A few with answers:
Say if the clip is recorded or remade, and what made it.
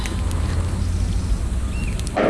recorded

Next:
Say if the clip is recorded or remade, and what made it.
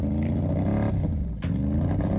recorded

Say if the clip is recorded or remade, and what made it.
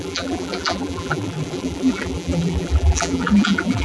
remade, vocoder, BigVGAN v2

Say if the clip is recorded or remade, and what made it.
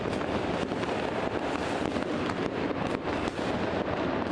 recorded